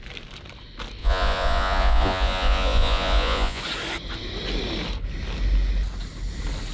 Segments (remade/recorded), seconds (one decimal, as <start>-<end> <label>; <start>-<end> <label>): 0.0-1.0 recorded; 1.0-3.6 remade; 3.6-6.7 recorded